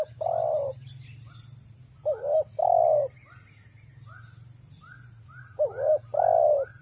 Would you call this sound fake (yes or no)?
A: no